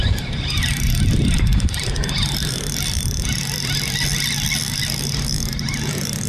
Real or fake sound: fake